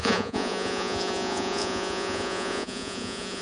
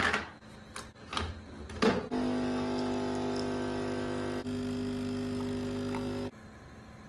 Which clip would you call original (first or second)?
second